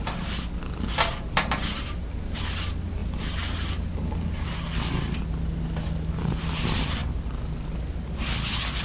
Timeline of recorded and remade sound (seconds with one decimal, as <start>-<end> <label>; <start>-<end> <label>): 0.0-8.8 recorded